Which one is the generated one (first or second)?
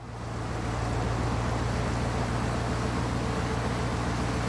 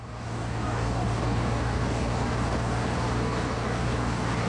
second